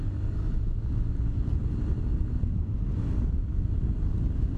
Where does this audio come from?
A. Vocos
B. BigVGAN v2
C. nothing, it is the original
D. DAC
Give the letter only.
C